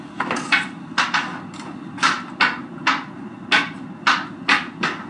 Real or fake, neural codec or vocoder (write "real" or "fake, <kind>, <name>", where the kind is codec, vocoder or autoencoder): real